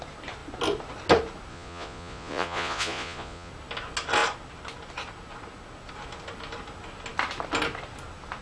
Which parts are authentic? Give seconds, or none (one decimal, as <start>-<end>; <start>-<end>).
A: 0.0-1.5; 3.5-8.4

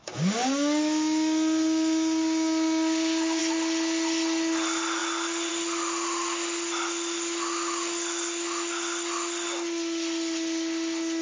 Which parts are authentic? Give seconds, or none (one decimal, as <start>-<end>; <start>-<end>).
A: 3.4-11.2

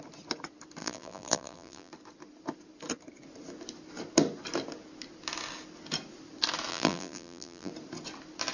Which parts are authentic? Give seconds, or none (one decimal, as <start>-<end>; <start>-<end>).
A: 0.0-0.8; 1.9-6.7; 7.7-8.5

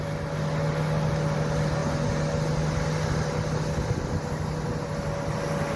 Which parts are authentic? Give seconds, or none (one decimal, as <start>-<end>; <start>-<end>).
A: 0.0-5.8

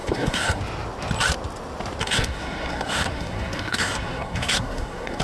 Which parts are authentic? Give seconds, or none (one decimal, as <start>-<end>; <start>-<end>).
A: 0.6-2.0

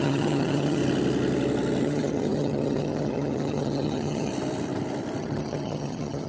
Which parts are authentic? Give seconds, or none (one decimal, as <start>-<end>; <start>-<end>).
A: 0.8-1.8; 4.3-5.2

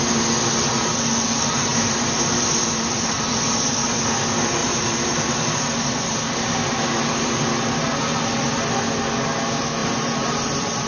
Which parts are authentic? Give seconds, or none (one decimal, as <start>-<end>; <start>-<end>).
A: 0.0-1.7; 3.3-4.6; 6.9-9.8